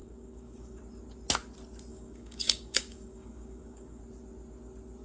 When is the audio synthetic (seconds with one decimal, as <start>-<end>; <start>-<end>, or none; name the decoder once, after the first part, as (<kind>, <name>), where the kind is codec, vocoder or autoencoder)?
0.0-0.8 (codec, DAC); 1.9-4.0